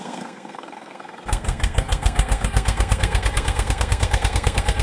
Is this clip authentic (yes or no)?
no